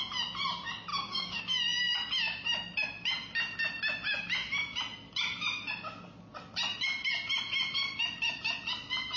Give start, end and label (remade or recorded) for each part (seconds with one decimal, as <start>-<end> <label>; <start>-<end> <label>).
0.0-0.9 recorded; 0.9-1.4 remade; 1.4-9.2 recorded